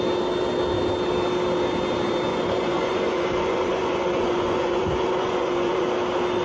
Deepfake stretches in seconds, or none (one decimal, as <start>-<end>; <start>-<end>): 2.3-5.9